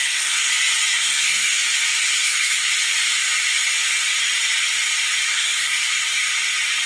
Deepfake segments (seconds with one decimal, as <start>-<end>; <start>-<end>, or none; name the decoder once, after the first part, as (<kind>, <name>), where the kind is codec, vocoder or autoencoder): 0.0-0.5 (codec, SNAC); 0.9-1.5; 2.1-2.7; 5.3-6.0